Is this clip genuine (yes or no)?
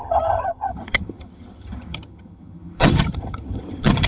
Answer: no